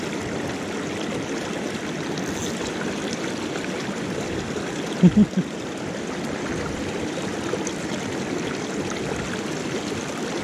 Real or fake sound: real